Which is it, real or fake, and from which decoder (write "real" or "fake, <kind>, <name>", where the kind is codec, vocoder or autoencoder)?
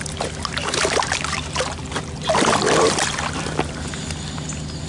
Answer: real